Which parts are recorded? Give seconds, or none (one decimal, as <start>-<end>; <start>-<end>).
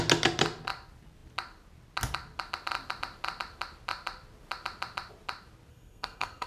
0.0-5.7